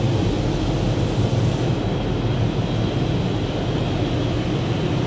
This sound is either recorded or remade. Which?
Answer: recorded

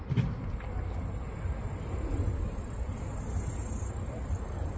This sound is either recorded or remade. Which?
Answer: recorded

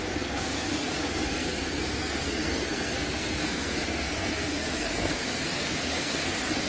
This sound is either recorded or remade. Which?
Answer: remade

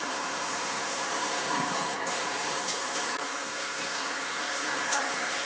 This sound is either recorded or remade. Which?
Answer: remade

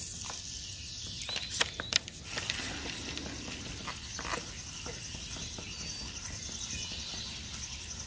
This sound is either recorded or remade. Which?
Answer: recorded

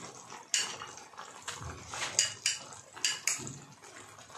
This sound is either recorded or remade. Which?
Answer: recorded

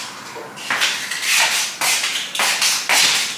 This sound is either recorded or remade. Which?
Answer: recorded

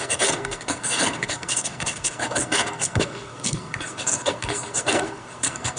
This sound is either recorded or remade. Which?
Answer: remade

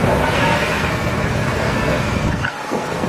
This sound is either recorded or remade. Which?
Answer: remade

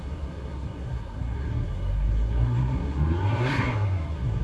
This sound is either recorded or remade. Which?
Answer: remade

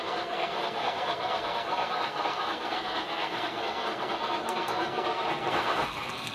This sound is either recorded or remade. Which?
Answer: remade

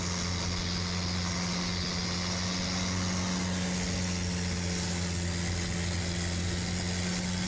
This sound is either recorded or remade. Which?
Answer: recorded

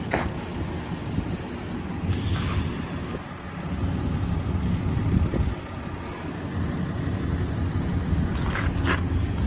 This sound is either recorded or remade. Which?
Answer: recorded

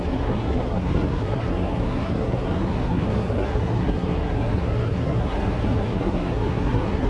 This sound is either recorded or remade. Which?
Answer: remade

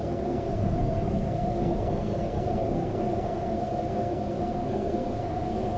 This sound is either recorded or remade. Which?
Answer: remade